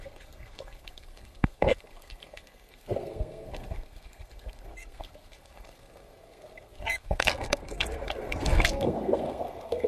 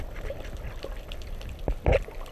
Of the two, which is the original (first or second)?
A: second